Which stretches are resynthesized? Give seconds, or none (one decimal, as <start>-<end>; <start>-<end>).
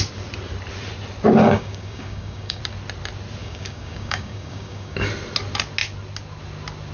1.4-2.6; 3.4-5.1